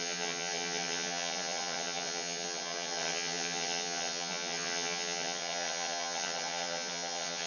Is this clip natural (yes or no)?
no